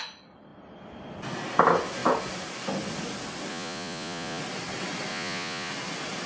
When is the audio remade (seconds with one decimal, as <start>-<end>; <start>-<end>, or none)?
3.5-4.4; 5.1-5.7